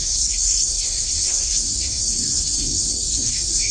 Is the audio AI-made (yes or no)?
yes